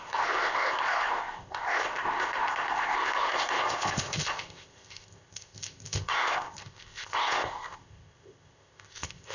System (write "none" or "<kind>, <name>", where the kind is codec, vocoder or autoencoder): codec, ZipCodec